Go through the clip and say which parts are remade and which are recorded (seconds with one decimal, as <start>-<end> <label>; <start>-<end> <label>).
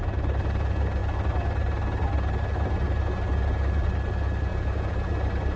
0.0-5.6 recorded